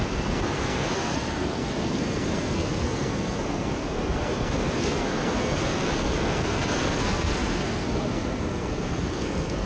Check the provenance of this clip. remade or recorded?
remade